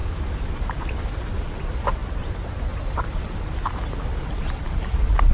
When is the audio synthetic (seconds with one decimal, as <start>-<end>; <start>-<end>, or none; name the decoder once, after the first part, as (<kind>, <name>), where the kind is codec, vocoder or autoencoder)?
0.0-0.8 (vocoder, BigVGAN v2); 2.0-3.2